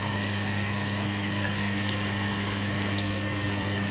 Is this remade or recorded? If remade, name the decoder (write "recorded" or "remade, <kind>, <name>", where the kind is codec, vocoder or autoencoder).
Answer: remade, codec, SNAC